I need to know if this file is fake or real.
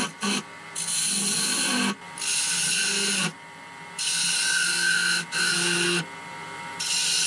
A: real